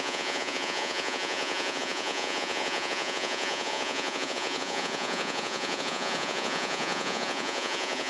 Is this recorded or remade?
remade